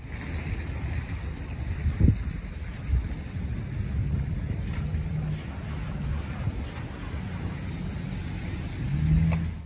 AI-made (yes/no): no